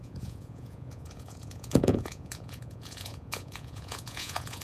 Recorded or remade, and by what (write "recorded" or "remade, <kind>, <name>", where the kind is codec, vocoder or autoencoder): remade, vocoder, Vocos